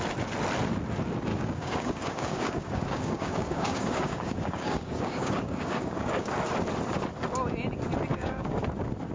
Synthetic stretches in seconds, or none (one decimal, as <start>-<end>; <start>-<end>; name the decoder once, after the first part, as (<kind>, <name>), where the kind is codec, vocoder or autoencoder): 1.3-6.3 (codec, DAC); 8.1-8.6